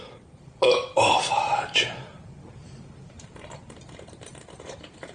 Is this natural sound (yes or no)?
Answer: no